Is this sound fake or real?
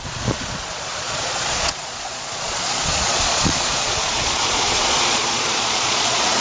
fake